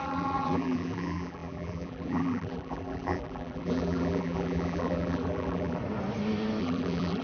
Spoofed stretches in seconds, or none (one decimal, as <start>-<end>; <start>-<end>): 0.0-5.8; 6.6-7.2